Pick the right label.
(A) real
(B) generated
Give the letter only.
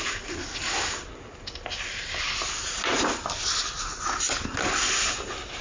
A